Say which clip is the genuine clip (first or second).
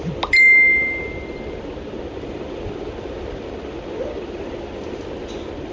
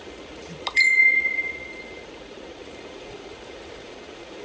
first